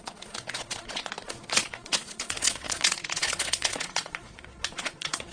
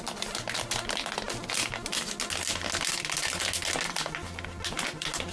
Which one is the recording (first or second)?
second